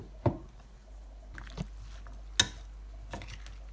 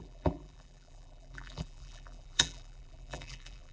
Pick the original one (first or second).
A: first